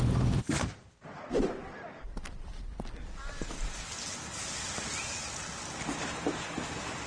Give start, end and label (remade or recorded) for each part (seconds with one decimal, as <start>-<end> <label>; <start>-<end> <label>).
0.0-1.6 remade; 1.6-4.9 recorded; 4.9-7.1 remade